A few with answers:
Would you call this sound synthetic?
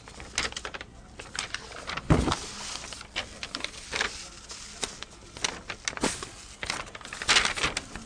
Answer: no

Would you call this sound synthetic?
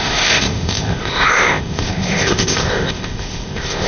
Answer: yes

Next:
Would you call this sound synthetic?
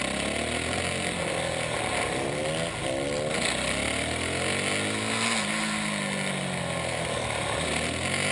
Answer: no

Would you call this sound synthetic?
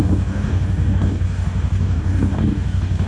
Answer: yes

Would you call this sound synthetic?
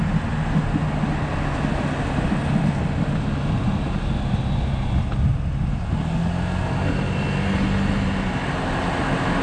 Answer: no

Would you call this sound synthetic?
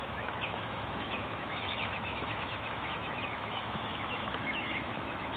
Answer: yes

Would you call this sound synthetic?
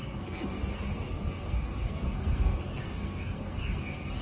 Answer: yes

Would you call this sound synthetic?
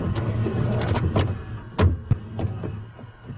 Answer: no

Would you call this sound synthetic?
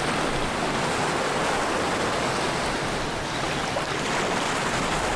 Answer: no